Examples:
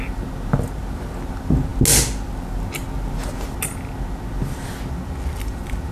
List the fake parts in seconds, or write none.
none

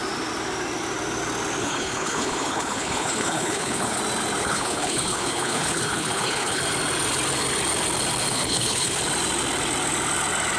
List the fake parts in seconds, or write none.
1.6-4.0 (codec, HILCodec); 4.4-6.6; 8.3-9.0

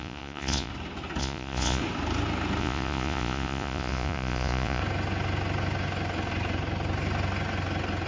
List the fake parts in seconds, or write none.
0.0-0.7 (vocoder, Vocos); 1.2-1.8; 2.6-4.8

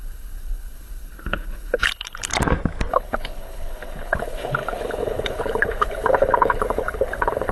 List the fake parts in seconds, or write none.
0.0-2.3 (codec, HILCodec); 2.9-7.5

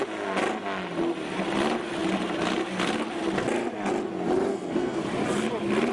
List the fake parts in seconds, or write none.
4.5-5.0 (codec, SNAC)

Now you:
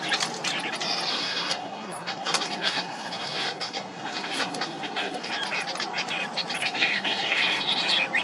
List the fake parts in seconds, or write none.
1.1-5.3 (codec, SNAC); 6.6-7.6

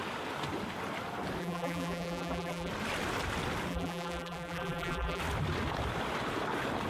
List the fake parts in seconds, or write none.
1.4-2.7 (vocoder, BigVGAN v2); 3.7-5.2